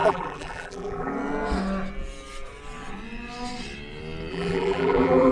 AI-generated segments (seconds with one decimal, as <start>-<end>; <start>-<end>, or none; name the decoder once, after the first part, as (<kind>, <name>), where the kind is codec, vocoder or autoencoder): 0.0-1.1 (vocoder, BigVGAN v2); 4.3-5.3